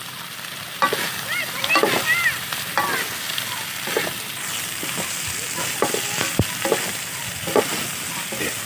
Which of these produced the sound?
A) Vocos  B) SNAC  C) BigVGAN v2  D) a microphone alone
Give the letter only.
D